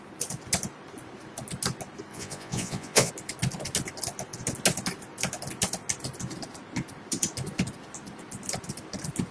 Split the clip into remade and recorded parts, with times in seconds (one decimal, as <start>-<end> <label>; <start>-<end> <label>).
0.0-2.1 recorded; 2.1-3.1 remade; 3.1-9.3 recorded